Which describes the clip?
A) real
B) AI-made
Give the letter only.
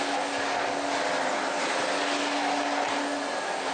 A